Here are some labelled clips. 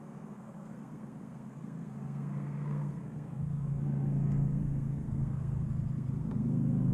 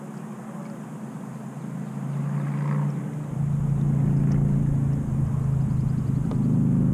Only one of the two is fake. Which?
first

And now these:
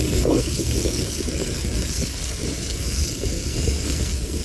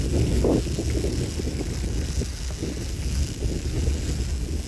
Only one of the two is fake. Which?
first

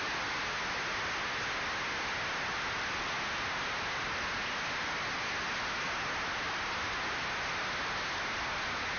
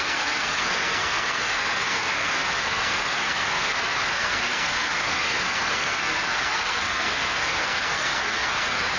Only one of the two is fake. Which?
second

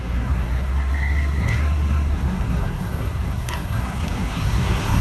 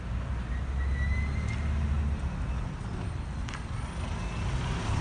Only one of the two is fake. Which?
first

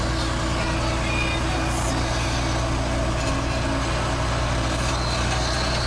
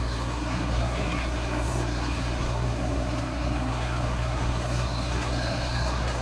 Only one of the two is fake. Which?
second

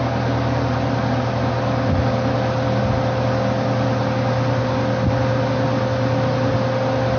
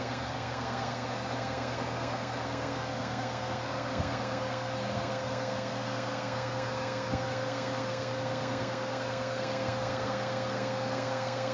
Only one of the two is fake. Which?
second